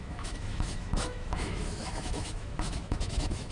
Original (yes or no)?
no